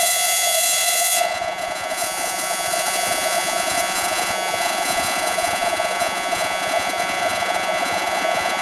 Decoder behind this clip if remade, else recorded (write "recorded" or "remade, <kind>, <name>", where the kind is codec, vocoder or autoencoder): remade, vocoder, Vocos